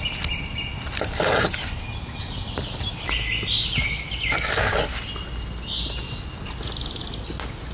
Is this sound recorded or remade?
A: recorded